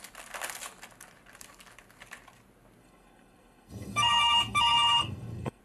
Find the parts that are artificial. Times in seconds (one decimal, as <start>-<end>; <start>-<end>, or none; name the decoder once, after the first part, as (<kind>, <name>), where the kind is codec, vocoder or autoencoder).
2.8-5.6 (codec, SNAC)